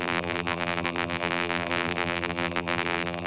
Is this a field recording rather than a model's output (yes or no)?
no